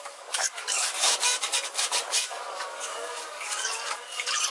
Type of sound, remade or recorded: remade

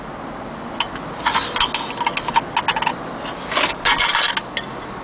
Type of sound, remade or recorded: recorded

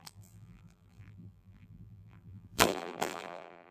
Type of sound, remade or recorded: remade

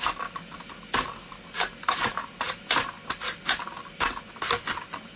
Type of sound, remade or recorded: recorded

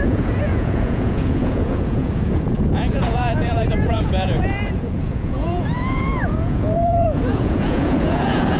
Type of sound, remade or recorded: remade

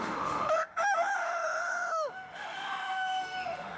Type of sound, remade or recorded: remade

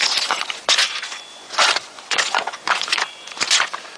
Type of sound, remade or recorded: remade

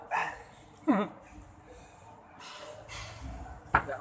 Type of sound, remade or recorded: recorded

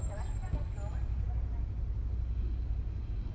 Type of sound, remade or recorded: recorded